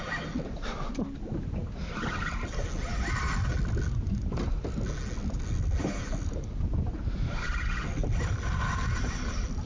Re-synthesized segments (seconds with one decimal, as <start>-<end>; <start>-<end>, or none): none